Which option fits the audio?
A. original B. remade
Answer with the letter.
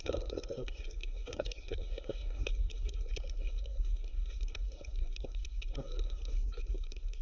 B